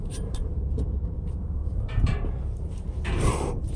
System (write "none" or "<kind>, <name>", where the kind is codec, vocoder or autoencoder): vocoder, BigVGAN v2